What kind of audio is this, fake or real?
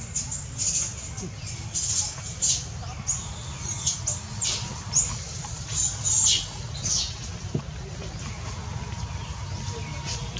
real